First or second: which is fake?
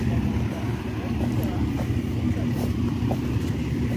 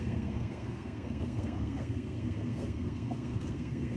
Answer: second